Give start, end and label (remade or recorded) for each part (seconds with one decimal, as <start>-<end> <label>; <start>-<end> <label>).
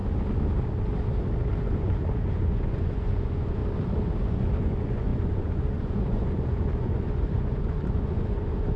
0.0-1.6 recorded; 1.6-3.6 remade; 3.6-4.2 recorded; 4.2-8.8 remade